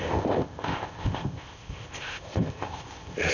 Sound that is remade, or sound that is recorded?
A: remade